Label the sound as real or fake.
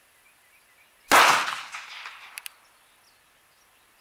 real